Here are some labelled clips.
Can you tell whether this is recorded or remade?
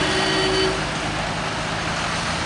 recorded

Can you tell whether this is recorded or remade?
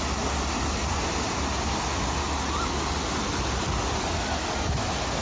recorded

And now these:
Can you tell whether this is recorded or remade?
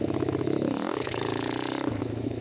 remade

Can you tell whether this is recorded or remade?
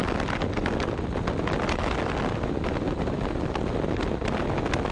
recorded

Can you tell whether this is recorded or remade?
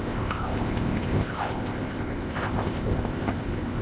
remade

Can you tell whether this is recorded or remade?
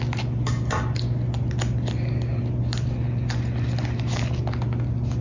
recorded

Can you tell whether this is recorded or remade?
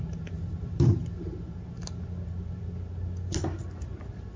recorded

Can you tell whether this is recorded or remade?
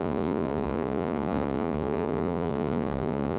remade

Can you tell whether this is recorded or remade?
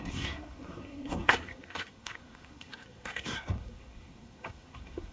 remade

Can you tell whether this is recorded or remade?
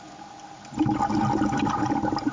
recorded